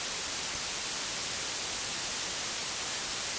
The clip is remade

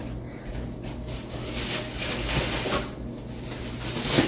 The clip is recorded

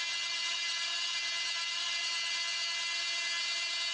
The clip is recorded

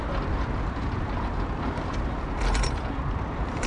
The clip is recorded